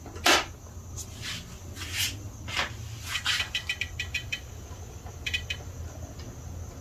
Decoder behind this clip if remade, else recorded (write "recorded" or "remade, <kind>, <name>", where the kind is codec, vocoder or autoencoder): recorded